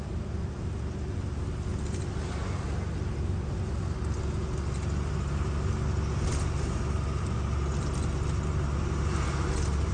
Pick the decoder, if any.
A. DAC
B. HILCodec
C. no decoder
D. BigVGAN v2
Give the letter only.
C